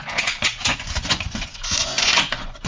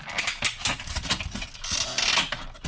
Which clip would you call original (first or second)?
second